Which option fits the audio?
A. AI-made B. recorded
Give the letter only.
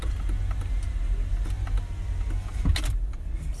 B